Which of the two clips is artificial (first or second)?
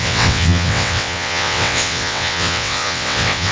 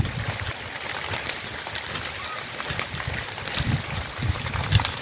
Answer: first